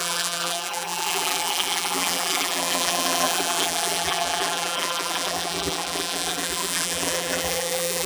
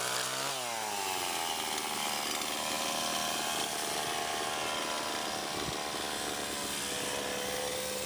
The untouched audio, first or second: second